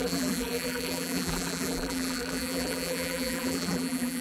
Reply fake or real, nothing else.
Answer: fake